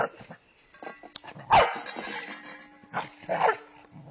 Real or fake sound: real